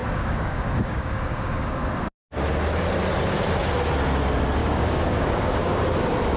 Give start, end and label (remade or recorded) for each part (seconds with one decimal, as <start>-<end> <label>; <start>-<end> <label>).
0.0-1.8 remade; 1.8-4.6 recorded; 4.6-5.5 remade; 5.5-6.4 recorded